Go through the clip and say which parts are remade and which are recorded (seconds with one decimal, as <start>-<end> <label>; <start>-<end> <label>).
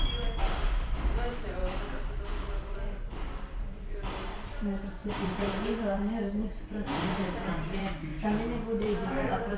0.0-1.6 remade; 1.6-3.1 recorded; 3.1-8.1 remade; 8.1-8.8 recorded; 8.8-9.6 remade